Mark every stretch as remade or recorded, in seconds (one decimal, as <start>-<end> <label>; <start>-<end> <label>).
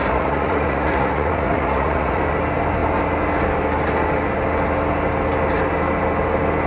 0.0-2.2 remade; 2.2-6.7 recorded